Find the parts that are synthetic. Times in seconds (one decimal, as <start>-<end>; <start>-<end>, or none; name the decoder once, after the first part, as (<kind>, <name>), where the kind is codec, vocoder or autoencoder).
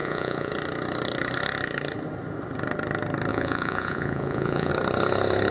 0.0-0.5 (vocoder, Vocos); 3.3-4.7